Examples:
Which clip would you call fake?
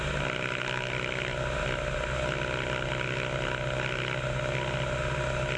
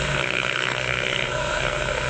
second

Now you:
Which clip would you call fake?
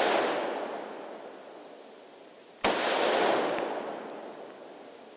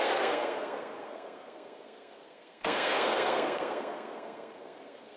second